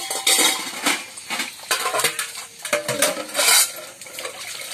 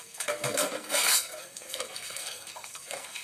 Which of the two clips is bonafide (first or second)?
first